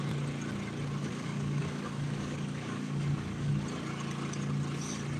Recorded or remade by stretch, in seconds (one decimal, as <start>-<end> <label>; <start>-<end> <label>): 0.0-1.0 recorded; 1.0-3.5 remade; 3.5-5.2 recorded